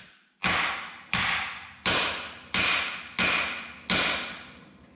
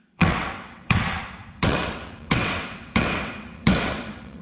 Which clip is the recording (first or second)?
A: first